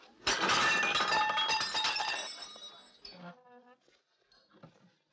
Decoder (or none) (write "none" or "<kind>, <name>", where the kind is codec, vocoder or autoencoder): none